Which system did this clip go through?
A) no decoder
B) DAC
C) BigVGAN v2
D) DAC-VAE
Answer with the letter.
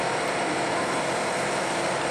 A